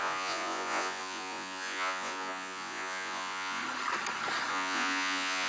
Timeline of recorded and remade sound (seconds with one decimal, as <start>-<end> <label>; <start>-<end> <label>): 0.0-3.6 remade; 3.6-4.5 recorded; 4.5-5.5 remade